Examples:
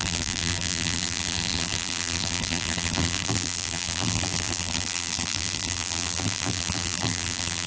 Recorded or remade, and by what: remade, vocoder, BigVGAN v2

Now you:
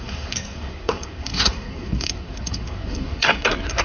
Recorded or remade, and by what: remade, codec, SNAC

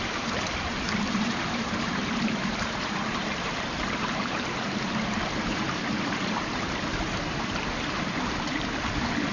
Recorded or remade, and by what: remade, vocoder, BigVGAN v2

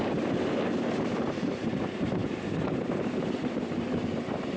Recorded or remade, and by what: remade, vocoder, BigVGAN v2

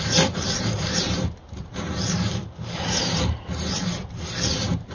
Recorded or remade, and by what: remade, vocoder, BigVGAN v2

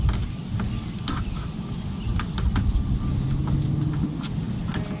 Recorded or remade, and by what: recorded